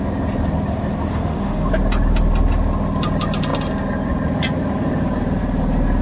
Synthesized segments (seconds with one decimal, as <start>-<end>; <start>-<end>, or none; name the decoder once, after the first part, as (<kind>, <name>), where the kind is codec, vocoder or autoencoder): 1.1-1.7 (autoencoder, DAC-VAE)